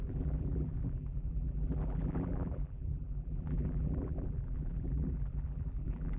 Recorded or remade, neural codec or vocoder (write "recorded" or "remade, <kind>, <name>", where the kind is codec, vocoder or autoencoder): remade, vocoder, BigVGAN v2